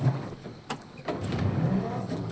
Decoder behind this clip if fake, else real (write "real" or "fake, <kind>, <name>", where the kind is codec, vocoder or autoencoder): fake, codec, DAC